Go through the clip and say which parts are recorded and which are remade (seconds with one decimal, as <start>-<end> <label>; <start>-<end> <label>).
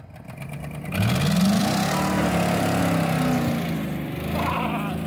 0.0-5.1 recorded